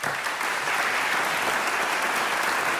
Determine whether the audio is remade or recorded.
remade